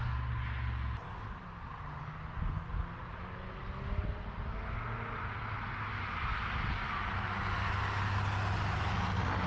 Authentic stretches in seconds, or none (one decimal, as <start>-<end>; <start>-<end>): 0.0-9.5